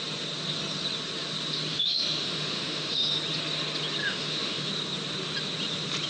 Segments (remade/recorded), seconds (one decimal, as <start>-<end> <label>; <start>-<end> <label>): 0.0-1.7 recorded; 1.7-3.1 remade; 3.1-4.0 recorded; 4.0-4.7 remade; 4.7-6.1 recorded